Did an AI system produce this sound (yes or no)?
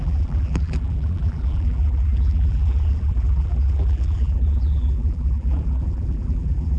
yes